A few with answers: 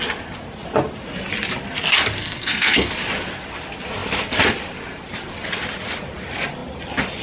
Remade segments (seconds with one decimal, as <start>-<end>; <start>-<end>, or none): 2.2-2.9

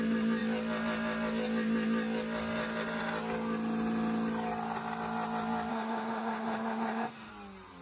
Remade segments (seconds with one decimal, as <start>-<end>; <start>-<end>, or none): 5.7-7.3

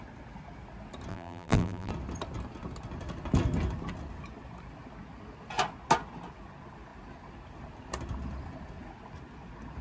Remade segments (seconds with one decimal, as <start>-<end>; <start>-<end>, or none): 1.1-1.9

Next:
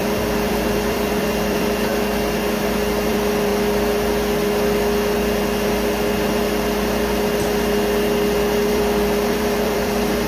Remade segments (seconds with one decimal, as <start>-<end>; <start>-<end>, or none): 0.0-1.9; 3.1-3.5; 8.7-10.3

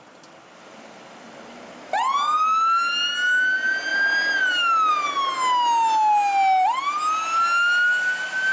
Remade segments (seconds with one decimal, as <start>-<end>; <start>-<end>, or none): none

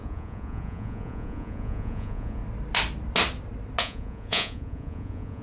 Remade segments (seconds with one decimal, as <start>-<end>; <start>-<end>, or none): 0.0-2.4; 3.8-5.4

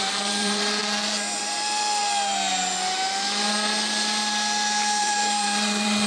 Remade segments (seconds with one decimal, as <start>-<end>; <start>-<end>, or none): 0.0-0.8; 1.4-2.0; 5.0-6.1

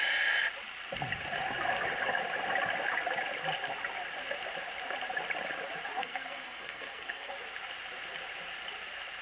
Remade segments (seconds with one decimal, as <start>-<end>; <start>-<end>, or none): 6.0-7.3